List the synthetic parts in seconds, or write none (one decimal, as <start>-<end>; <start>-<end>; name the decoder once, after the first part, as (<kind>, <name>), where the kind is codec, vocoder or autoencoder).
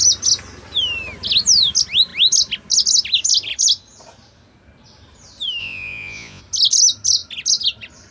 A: 5.6-6.4 (vocoder, Vocos)